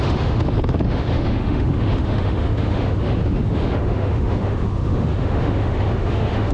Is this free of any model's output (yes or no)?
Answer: no